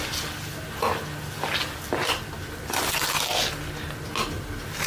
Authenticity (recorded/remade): recorded